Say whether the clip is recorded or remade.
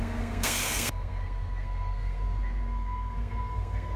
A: remade